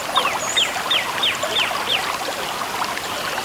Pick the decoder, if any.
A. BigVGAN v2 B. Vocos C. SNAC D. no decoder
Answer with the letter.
D